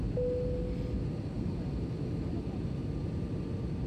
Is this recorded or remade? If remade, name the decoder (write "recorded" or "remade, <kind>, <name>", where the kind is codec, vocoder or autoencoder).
recorded